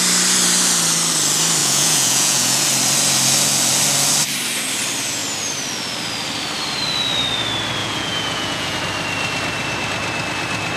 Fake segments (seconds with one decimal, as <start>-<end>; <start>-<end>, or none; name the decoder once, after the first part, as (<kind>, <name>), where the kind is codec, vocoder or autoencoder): 1.6-2.7 (vocoder, Vocos); 7.8-8.8